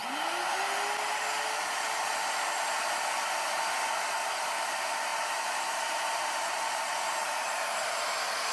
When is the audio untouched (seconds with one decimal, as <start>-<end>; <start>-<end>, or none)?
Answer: 0.0-5.1; 8.0-8.5